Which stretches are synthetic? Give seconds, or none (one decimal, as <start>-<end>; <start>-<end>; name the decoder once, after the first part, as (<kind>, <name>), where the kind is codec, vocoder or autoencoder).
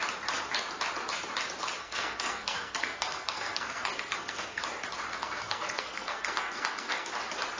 1.8-4.6 (codec, SNAC); 5.1-7.1